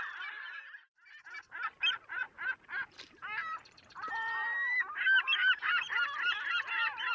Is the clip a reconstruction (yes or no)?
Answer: yes